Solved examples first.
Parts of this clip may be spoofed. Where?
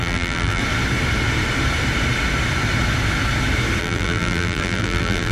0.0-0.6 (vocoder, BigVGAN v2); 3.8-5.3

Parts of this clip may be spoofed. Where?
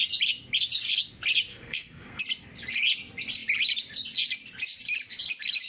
1.5-2.2 (codec, SNAC)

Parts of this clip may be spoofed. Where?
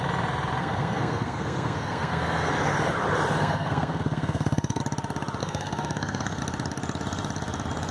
0.6-2.5 (codec, SNAC); 3.4-4.8; 5.4-6.4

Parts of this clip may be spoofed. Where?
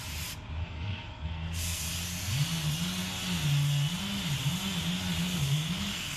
0.6-1.8 (codec, SNAC); 5.2-6.2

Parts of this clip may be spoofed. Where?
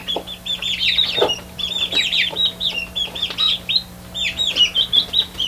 none